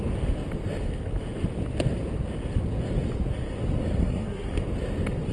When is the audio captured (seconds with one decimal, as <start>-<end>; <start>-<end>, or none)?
0.0-4.0; 4.5-5.3